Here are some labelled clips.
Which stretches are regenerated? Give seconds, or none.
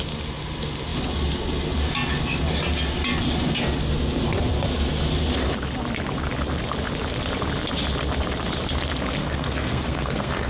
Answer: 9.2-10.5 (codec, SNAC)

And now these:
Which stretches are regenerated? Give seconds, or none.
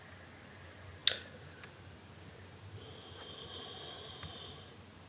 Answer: none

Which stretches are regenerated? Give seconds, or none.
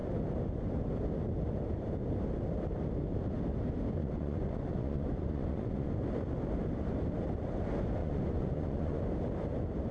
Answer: 4.0-5.9 (vocoder, Vocos); 8.0-9.0